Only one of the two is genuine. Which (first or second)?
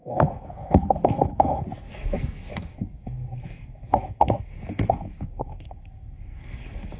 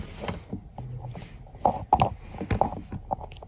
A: second